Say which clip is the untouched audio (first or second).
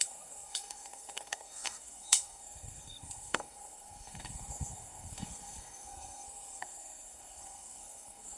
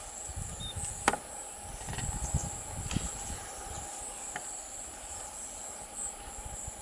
second